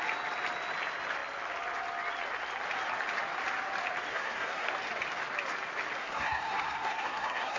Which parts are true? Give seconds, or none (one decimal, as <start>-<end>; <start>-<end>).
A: 0.0-4.1; 4.7-6.0